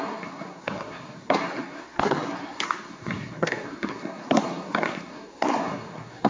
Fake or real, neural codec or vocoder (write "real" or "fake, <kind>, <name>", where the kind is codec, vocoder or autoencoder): fake, codec, SNAC